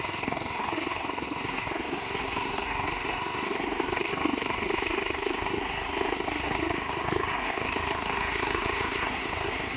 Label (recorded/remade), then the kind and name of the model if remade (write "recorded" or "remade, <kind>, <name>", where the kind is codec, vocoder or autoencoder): remade, codec, SNAC